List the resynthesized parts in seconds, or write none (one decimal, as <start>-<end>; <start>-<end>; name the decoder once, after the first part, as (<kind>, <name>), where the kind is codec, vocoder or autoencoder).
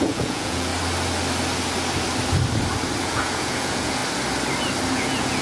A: 0.0-0.7 (vocoder, Vocos); 3.0-4.0; 4.9-5.4